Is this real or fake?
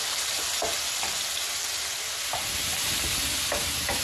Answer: real